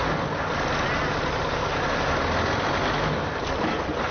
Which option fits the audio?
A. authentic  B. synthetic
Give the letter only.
A